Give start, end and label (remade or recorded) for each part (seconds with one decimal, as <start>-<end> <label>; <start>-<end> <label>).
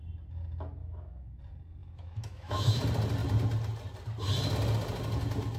0.0-0.8 recorded; 0.8-1.4 remade; 1.4-1.8 recorded; 1.8-2.8 remade; 2.8-5.6 recorded